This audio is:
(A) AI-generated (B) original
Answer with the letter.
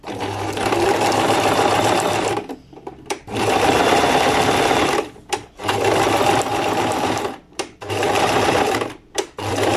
A